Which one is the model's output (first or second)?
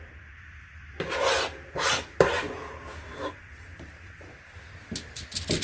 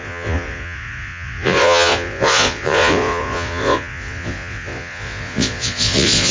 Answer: second